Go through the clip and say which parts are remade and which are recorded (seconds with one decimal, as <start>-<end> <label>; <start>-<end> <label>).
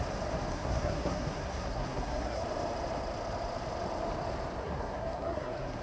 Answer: 0.0-0.5 recorded; 0.5-2.4 remade; 2.4-4.6 recorded; 4.6-5.8 remade